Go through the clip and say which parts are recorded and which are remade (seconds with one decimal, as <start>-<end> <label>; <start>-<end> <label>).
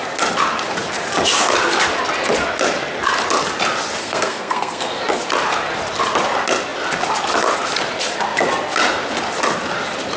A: 0.0-4.0 recorded; 4.0-5.0 remade; 5.0-10.2 recorded